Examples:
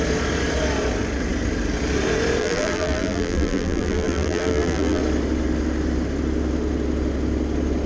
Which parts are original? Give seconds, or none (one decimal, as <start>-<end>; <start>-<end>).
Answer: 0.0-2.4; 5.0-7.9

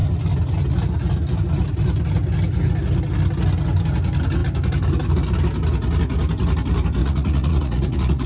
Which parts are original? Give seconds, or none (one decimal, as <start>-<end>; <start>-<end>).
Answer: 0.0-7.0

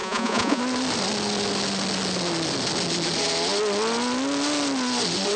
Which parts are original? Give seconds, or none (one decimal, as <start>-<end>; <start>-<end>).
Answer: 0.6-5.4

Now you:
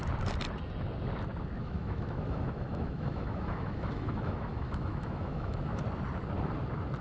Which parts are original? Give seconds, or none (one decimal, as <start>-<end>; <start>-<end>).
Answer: 0.0-1.6; 5.8-7.0

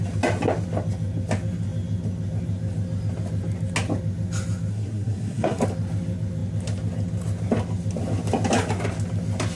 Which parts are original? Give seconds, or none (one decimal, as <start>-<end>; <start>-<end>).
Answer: 0.0-4.7; 5.6-9.6